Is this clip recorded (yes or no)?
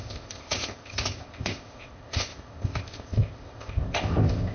no